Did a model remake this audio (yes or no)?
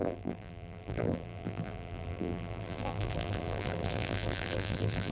yes